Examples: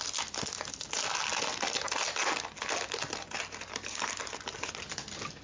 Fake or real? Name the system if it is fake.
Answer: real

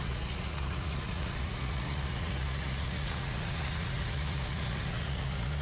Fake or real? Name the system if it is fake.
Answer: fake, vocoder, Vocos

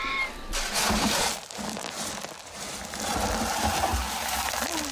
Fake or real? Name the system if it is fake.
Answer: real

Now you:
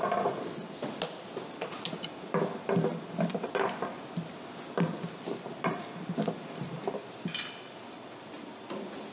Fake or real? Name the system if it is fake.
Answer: real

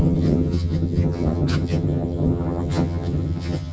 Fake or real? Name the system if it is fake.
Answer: fake, vocoder, HiFi-GAN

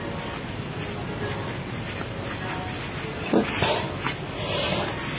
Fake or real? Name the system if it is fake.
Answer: real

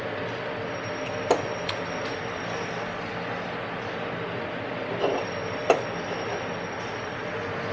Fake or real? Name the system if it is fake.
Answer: real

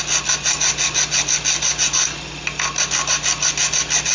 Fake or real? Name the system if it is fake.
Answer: real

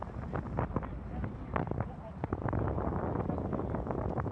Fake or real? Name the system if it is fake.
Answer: real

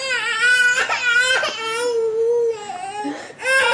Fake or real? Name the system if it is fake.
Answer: real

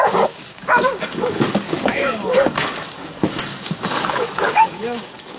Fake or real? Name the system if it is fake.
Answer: fake, codec, DAC